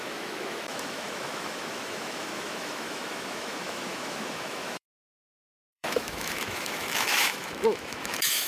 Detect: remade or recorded remade